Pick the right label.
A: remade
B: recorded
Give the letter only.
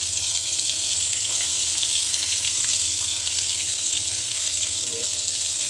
A